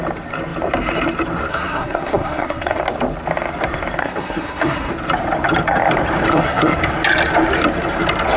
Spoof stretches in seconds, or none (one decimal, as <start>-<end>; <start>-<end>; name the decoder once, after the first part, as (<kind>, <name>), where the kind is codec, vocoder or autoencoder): 1.5-2.8 (codec, SNAC); 4.0-4.9; 6.3-6.8